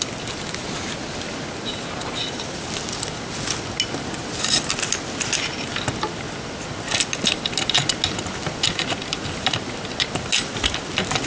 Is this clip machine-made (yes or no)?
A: no